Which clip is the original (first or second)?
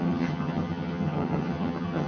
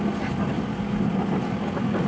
second